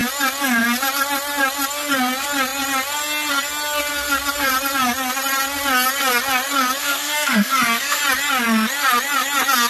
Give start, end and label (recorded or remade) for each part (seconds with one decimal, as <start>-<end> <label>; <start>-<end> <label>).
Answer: 0.0-6.8 recorded; 6.8-8.0 remade; 8.0-9.7 recorded